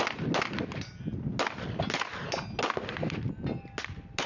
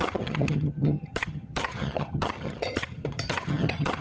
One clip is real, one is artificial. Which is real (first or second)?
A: first